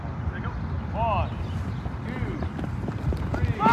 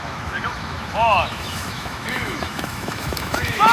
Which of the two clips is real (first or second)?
first